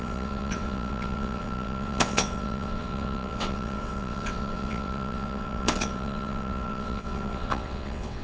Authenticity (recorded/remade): remade